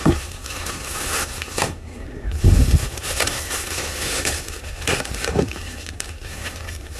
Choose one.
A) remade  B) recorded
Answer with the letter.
A